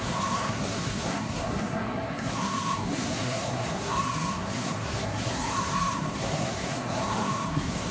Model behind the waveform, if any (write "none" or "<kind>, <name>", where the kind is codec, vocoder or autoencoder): codec, SNAC